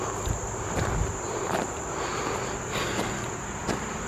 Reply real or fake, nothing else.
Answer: real